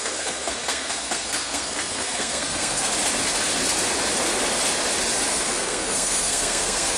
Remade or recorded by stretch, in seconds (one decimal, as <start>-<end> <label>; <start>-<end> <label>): 0.0-2.9 remade; 2.9-5.3 recorded; 5.3-7.0 remade